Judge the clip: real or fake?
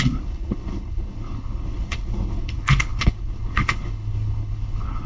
fake